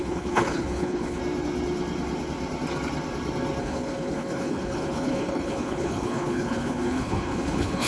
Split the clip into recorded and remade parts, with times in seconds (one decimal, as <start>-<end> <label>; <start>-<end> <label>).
0.0-1.2 remade; 1.2-3.6 recorded; 3.6-7.9 remade